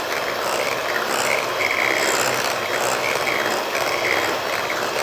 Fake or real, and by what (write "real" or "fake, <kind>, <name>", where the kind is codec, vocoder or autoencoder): real